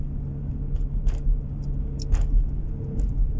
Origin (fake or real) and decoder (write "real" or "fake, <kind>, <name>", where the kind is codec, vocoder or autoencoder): real